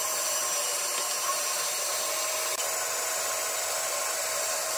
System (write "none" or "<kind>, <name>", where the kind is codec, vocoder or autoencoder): none